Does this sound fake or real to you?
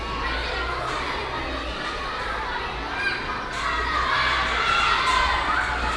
real